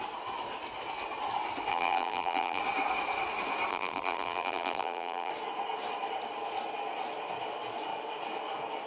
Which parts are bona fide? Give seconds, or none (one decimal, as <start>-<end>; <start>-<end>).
0.0-1.7; 2.6-3.7; 5.3-8.9